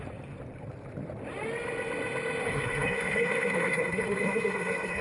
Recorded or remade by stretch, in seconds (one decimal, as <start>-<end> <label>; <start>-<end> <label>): 0.0-2.4 recorded; 2.4-5.0 remade